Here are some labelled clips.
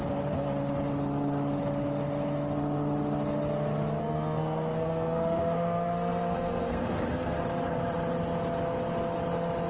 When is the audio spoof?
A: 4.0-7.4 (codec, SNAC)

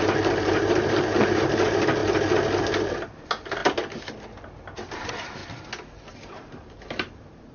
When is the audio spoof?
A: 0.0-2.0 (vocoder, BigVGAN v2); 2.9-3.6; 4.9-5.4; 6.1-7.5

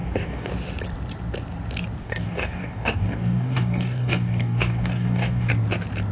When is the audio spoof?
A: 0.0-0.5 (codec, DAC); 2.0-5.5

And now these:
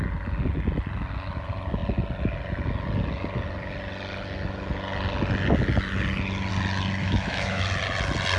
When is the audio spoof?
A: 7.0-7.6 (autoencoder, DAC-VAE)